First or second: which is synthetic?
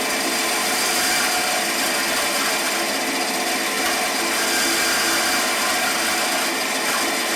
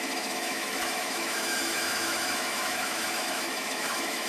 second